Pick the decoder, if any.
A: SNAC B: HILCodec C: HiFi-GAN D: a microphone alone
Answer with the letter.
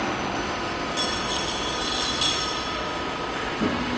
D